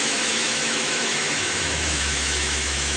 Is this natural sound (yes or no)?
no